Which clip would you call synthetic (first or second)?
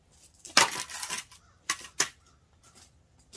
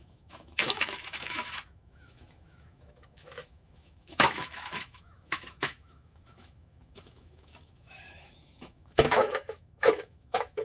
second